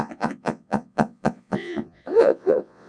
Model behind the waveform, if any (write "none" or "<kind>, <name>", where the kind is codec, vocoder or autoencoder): vocoder, Vocos